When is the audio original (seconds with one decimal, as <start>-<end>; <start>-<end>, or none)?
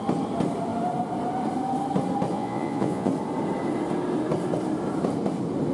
0.0-2.3; 3.1-5.7